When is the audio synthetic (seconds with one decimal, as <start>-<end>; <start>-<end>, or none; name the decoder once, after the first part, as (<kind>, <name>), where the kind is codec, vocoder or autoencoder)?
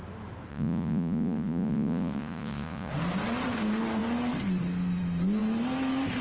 0.5-2.9 (vocoder, Vocos)